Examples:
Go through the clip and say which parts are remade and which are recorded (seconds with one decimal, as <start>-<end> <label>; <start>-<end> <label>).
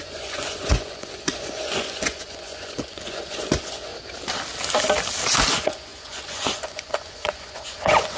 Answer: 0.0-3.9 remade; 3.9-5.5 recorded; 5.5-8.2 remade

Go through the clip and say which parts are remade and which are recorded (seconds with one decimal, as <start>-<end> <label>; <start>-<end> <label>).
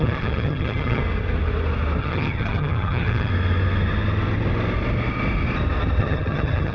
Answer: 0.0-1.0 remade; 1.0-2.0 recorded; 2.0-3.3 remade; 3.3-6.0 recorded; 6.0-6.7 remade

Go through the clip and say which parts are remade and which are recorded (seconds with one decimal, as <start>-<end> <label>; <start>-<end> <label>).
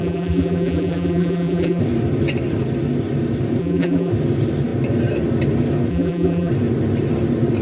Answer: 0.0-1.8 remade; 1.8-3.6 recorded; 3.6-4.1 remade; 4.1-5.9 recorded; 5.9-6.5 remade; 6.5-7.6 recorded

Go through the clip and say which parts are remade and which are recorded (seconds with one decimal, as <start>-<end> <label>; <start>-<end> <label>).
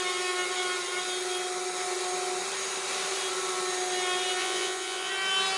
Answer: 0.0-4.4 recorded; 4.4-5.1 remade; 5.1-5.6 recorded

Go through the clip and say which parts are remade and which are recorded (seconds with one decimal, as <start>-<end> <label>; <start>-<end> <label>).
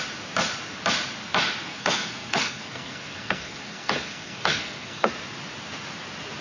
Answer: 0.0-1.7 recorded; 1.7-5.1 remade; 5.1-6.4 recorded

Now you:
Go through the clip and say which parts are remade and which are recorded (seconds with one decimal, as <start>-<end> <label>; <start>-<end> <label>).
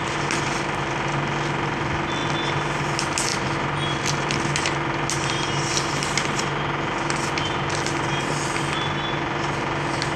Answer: 0.0-10.2 recorded